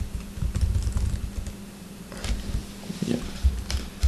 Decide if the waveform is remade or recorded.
recorded